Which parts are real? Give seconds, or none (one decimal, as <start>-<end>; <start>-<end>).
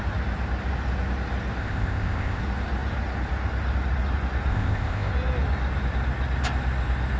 0.0-1.6; 2.4-4.5; 5.1-7.2